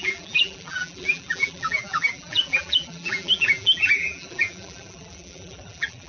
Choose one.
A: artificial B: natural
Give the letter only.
A